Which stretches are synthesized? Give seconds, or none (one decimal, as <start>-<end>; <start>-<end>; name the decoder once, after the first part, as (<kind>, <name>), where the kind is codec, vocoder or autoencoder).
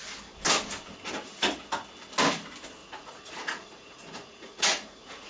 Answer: 2.8-5.3 (vocoder, Vocos)